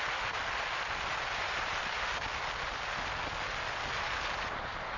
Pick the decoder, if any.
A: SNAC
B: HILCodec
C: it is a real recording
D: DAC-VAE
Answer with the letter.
C